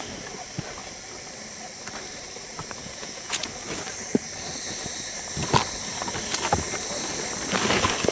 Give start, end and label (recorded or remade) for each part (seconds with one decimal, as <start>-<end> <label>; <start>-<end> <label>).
0.0-2.8 recorded; 2.8-3.5 remade; 3.5-8.1 recorded